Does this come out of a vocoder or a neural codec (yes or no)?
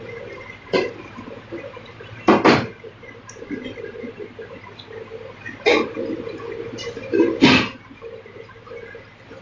no